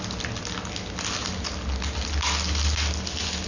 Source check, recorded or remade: recorded